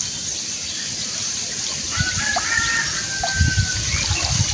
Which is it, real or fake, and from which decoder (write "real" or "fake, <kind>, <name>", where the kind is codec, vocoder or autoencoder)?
real